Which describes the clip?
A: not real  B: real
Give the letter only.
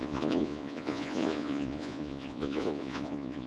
A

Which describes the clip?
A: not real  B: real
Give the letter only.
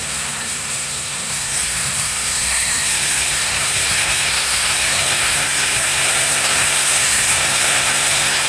A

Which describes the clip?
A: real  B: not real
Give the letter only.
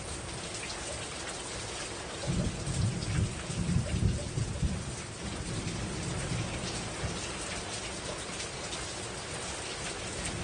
A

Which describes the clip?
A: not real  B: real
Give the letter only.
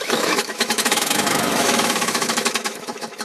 A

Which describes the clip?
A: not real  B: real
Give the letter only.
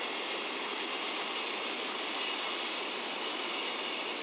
B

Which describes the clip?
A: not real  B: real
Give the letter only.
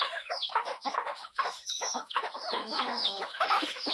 A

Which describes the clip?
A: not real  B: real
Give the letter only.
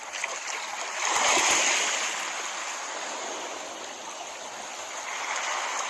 B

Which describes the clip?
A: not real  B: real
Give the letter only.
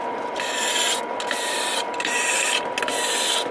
B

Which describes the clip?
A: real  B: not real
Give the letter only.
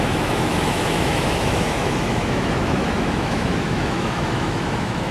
B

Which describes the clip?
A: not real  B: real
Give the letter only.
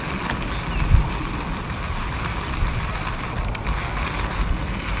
B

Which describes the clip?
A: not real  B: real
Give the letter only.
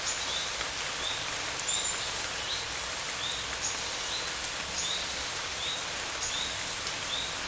B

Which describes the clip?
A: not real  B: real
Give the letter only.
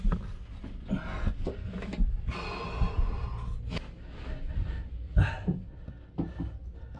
B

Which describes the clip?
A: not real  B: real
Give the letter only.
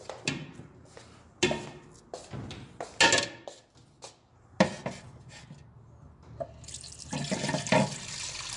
B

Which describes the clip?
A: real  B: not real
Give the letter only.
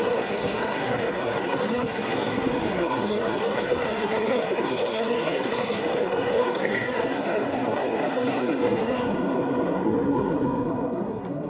B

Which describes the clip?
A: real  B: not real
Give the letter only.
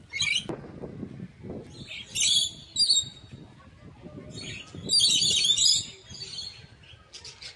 A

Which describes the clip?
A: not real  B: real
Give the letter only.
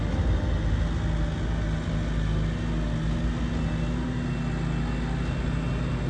B